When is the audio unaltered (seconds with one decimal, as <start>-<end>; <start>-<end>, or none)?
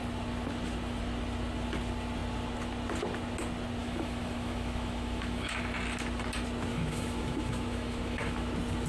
0.0-3.8; 5.6-6.7; 8.5-8.9